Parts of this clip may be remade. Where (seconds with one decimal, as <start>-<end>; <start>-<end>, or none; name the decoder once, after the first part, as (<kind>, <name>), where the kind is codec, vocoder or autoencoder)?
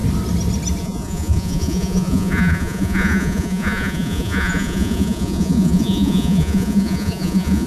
0.8-7.7 (vocoder, Vocos)